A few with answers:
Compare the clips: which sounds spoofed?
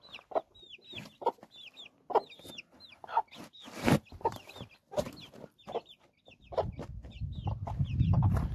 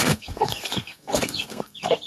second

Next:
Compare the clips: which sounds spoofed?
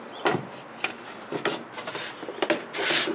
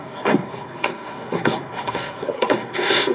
second